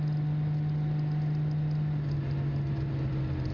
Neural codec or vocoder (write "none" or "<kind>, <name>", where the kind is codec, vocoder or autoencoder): none